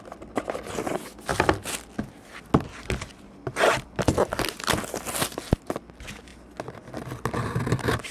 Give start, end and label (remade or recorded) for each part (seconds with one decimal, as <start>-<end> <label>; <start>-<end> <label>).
0.0-8.1 recorded